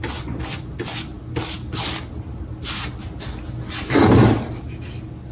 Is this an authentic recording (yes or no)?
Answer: yes